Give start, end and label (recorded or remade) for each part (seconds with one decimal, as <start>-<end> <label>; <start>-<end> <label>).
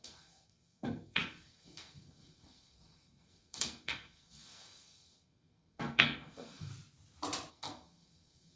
0.0-6.7 remade; 6.7-7.5 recorded; 7.5-8.6 remade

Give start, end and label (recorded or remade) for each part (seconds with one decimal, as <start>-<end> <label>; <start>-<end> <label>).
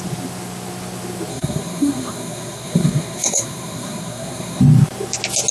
0.0-1.3 recorded; 1.3-4.6 remade; 4.6-5.5 recorded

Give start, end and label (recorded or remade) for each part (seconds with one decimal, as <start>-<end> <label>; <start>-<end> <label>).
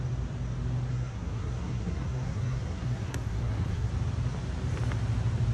0.0-0.9 recorded; 0.9-3.9 remade; 3.9-5.5 recorded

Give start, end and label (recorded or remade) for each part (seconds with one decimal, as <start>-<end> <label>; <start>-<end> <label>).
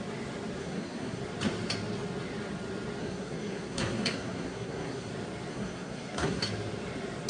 0.0-0.6 recorded; 0.6-1.2 remade; 1.2-3.0 recorded; 3.0-5.1 remade; 5.1-5.5 recorded; 5.5-6.4 remade; 6.4-7.3 recorded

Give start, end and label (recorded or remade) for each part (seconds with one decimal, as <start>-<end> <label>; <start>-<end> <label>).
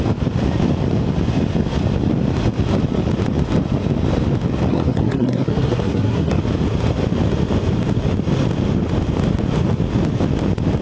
0.0-4.7 recorded; 4.7-6.4 remade; 6.4-10.8 recorded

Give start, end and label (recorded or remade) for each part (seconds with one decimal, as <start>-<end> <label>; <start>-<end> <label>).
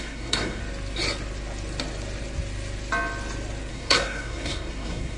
0.0-0.6 remade; 0.6-3.7 recorded; 3.7-5.2 remade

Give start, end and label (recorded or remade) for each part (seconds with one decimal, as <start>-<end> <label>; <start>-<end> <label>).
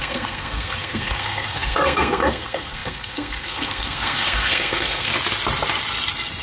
0.0-5.1 remade; 5.1-6.4 recorded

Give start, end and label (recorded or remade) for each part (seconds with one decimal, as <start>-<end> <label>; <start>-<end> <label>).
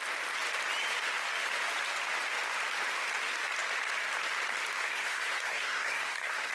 0.0-4.8 recorded; 4.8-6.5 remade